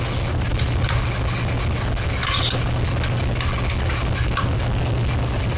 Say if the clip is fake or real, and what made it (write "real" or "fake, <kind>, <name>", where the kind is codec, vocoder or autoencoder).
real